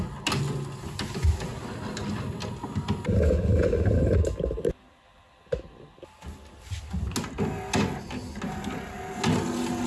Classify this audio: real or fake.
real